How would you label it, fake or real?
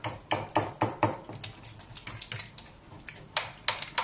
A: real